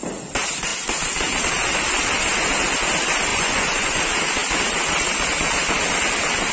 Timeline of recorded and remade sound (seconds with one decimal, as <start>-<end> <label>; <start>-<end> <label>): 0.0-3.3 recorded; 3.3-4.0 remade; 4.0-6.5 recorded